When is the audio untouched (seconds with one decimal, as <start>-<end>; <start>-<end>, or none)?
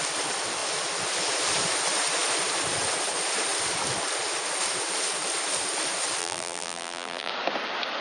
0.0-6.2; 7.3-8.0